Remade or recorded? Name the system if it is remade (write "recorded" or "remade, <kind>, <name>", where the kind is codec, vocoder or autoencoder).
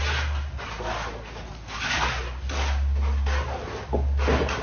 recorded